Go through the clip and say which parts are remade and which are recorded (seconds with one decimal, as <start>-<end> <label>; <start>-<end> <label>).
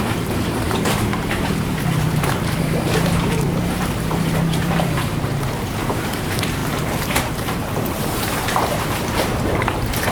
0.0-10.1 remade